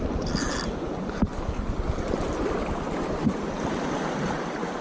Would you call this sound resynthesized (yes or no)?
no